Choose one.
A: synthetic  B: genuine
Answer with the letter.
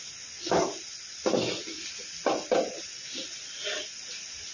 B